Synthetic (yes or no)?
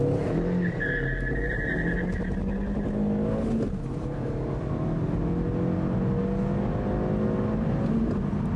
no